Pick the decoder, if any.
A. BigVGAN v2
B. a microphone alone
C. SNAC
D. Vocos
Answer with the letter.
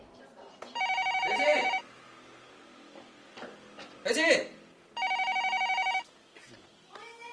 B